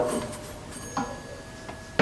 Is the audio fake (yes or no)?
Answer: no